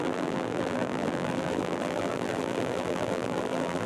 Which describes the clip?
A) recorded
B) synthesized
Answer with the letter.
B